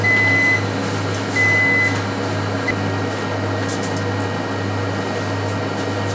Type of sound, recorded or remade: recorded